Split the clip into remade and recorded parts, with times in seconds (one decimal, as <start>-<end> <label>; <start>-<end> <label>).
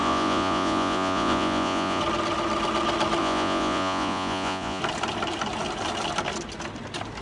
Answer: 0.0-2.0 remade; 2.0-3.2 recorded; 3.2-4.8 remade; 4.8-7.2 recorded